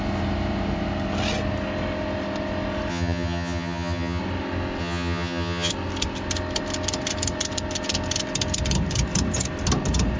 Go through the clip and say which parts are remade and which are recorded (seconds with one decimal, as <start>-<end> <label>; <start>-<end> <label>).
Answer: 0.0-2.9 recorded; 2.9-4.2 remade; 4.2-4.8 recorded; 4.8-5.7 remade; 5.7-10.2 recorded